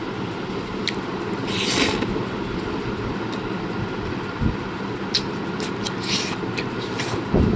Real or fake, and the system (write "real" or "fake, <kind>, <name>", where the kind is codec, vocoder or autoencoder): real